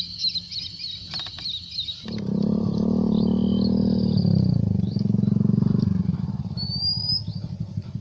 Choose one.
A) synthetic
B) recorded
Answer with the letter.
B